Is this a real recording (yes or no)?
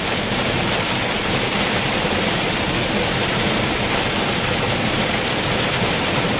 yes